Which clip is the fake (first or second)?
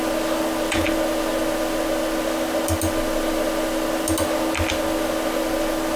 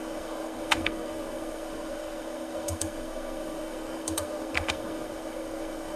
second